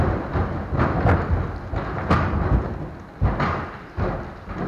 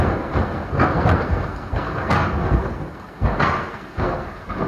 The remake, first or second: second